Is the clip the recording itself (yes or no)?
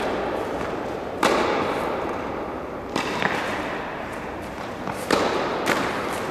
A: no